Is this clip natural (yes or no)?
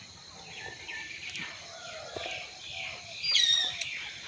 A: yes